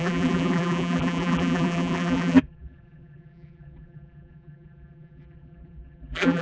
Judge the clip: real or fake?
fake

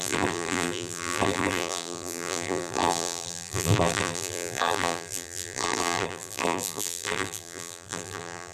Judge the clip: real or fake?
fake